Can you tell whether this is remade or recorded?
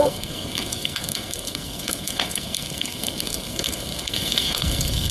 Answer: remade